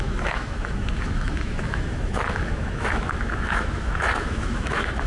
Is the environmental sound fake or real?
fake